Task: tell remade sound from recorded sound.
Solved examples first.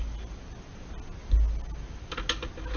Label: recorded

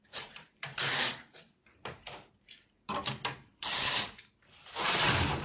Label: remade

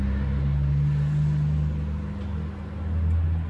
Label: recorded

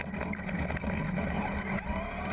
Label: recorded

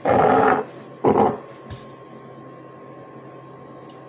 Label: recorded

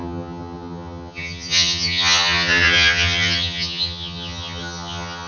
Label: remade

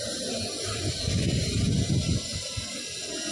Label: recorded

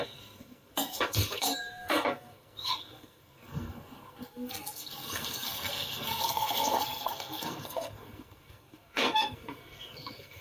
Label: remade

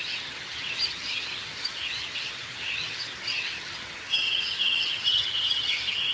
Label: remade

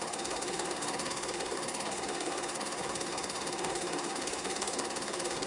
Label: remade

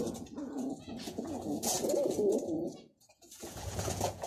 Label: remade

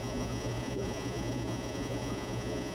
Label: remade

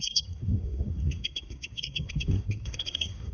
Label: remade